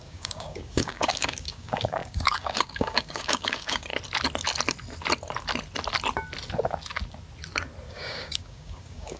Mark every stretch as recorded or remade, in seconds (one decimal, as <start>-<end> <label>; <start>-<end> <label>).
0.0-3.9 remade; 3.9-7.9 recorded; 7.9-9.2 remade